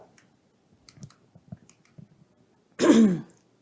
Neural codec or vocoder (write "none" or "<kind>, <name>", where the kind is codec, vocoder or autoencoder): none